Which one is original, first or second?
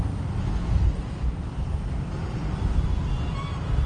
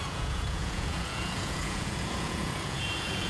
first